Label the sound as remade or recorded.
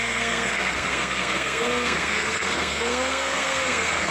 remade